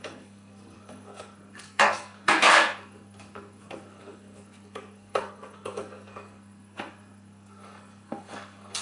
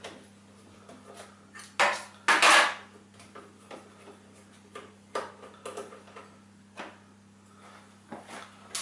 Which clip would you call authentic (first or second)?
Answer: second